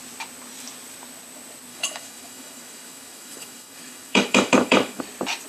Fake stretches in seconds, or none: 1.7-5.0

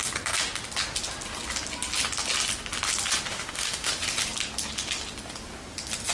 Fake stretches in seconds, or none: 3.3-3.9

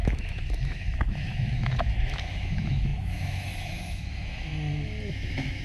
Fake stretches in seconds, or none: 0.0-4.5; 5.1-5.6

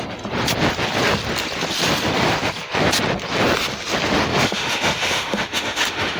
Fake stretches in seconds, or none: 4.3-6.2